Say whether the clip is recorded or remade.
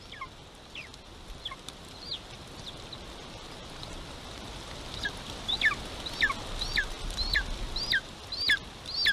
recorded